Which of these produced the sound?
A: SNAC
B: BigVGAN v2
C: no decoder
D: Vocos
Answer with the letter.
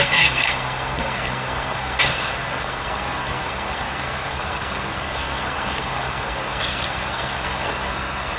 A